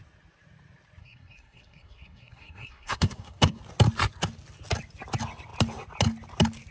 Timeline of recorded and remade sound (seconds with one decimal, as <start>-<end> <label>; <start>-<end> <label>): 0.0-1.0 recorded; 1.0-3.6 remade; 3.6-6.7 recorded